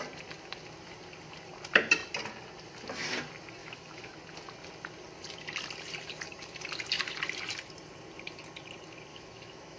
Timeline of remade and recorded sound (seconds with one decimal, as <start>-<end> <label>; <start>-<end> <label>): 0.0-3.6 recorded; 3.6-4.1 remade; 4.1-9.1 recorded; 9.1-9.8 remade